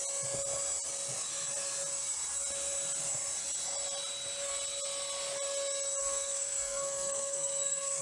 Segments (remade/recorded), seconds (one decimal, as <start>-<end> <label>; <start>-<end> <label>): 0.0-6.0 recorded; 6.0-8.0 remade

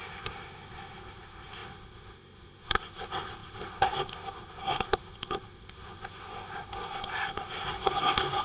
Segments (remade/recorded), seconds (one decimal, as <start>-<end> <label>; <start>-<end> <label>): 0.0-8.4 remade

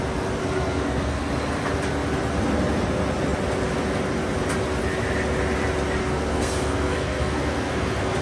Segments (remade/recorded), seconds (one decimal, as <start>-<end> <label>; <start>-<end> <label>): 0.0-0.4 recorded; 0.4-1.3 remade; 1.3-6.0 recorded; 6.0-8.2 remade

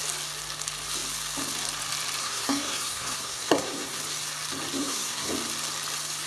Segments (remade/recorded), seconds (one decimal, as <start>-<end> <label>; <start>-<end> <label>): 0.0-2.2 recorded; 2.2-4.0 remade; 4.0-4.8 recorded; 4.8-5.3 remade; 5.3-6.3 recorded

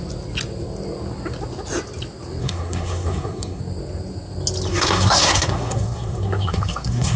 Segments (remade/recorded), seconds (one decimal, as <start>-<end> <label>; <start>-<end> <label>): 0.0-2.4 recorded; 2.4-3.6 remade; 3.6-4.7 recorded; 4.7-7.2 remade

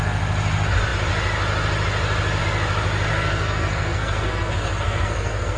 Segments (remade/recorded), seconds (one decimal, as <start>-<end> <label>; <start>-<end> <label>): 0.0-3.1 recorded; 3.1-5.6 remade